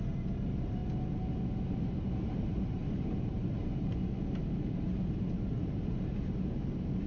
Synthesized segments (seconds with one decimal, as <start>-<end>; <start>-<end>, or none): 0.0-0.8; 1.7-2.8; 3.3-7.1